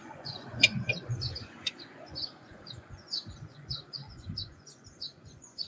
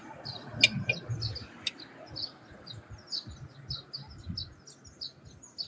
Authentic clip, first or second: second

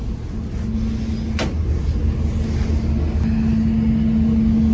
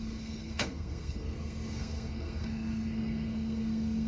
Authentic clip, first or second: first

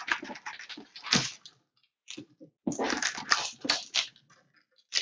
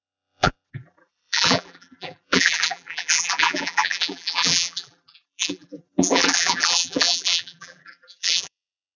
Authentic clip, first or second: first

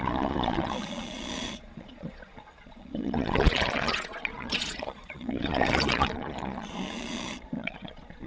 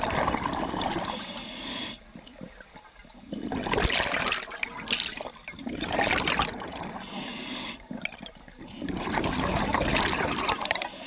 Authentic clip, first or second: second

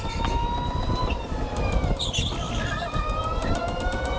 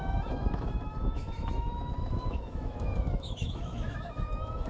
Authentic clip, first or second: first